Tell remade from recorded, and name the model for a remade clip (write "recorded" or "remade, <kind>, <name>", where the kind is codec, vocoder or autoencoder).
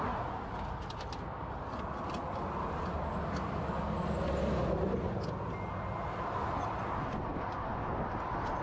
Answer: recorded